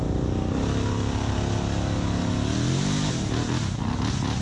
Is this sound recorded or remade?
recorded